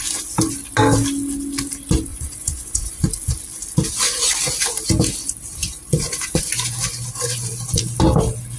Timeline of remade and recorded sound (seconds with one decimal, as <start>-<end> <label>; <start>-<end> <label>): 0.0-2.1 recorded; 2.1-3.0 remade; 3.0-5.6 recorded; 5.6-6.4 remade; 6.4-8.6 recorded